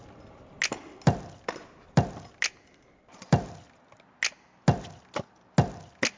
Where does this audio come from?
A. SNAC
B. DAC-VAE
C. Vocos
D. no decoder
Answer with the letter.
D